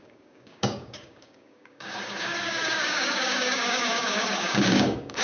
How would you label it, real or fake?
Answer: fake